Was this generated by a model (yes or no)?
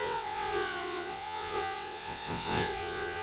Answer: yes